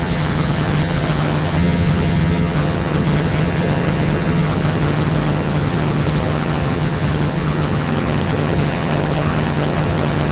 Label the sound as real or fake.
fake